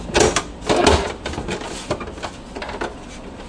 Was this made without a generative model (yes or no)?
yes